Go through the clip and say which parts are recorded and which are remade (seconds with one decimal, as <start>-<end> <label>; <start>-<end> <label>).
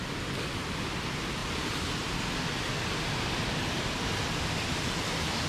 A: 0.0-5.5 recorded